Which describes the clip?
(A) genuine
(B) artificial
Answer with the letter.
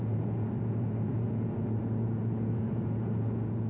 B